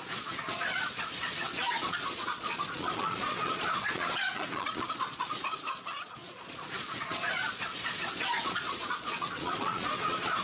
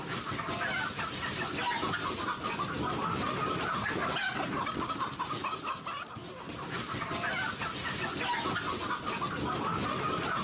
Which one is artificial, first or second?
first